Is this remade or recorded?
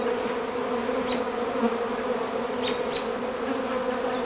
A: recorded